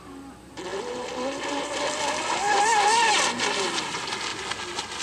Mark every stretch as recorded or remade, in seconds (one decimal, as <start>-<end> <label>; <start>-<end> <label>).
0.0-5.0 recorded